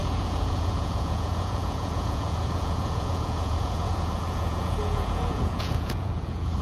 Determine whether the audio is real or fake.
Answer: fake